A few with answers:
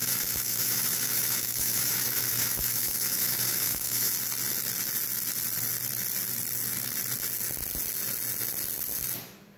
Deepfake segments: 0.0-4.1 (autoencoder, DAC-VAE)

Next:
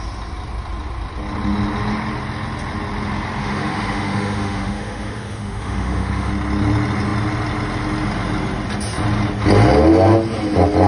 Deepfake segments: 3.4-6.3 (autoencoder, DAC-VAE)

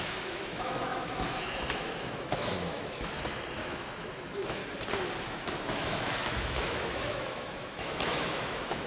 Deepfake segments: 0.0-4.6 (autoencoder, DAC-VAE); 5.2-8.9

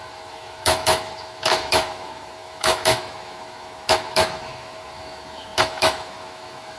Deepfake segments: 0.0-6.8 (autoencoder, DAC-VAE)

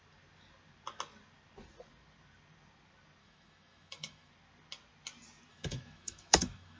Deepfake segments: 3.2-4.3 (autoencoder, DAC-VAE); 5.5-6.8